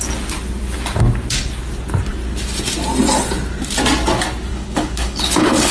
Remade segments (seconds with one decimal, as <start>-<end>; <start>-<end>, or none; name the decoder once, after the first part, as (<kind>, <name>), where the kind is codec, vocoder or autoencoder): 4.5-5.7 (codec, HILCodec)